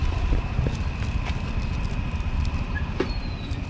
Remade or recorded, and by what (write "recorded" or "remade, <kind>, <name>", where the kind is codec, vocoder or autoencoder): remade, vocoder, BigVGAN v2